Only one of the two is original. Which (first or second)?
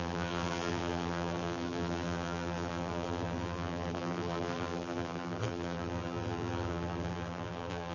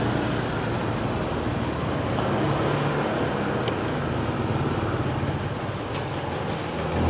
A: second